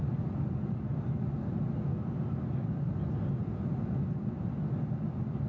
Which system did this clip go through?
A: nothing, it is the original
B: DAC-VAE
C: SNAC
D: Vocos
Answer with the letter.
A